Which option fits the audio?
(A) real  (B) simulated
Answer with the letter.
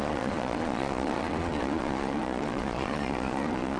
B